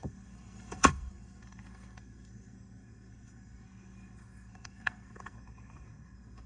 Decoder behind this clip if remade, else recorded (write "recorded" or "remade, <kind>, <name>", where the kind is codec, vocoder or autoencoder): remade, codec, SNAC